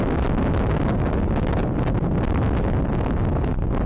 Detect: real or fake real